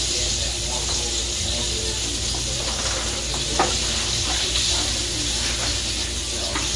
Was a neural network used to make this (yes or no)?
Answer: no